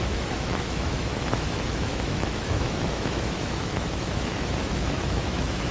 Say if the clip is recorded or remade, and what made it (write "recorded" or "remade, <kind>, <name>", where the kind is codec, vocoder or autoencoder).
remade, autoencoder, DAC-VAE